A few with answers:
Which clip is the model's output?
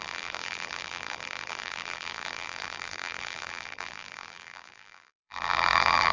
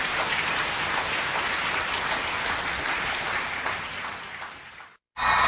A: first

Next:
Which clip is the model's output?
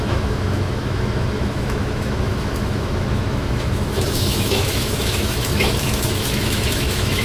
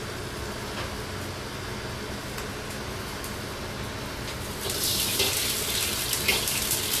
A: first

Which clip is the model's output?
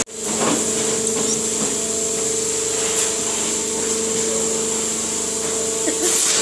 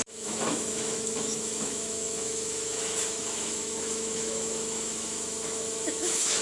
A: second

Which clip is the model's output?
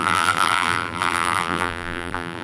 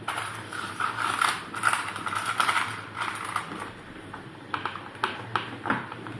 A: first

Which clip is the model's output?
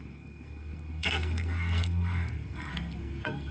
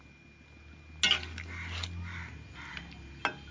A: first